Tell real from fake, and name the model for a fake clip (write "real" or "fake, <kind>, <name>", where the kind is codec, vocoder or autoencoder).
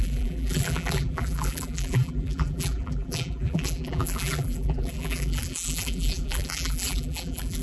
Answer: fake, vocoder, BigVGAN v2